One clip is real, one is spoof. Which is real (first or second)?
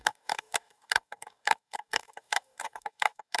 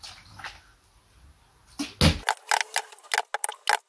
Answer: second